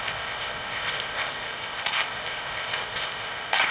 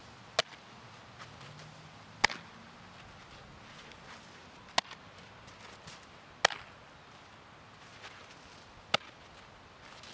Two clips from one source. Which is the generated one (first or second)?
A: first